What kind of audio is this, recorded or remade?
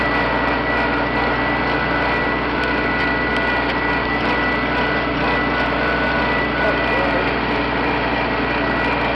recorded